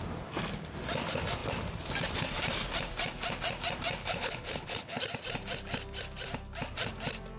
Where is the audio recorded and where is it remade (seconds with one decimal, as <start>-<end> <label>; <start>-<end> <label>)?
0.0-4.0 recorded; 4.0-5.0 remade; 5.0-7.4 recorded